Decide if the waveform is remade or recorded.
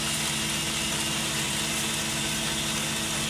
recorded